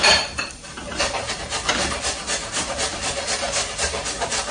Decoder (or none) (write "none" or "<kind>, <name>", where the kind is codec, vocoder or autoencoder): vocoder, BigVGAN v2